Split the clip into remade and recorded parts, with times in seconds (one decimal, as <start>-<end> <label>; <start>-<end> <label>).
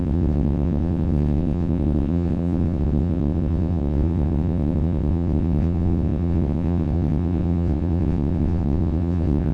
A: 0.0-9.5 remade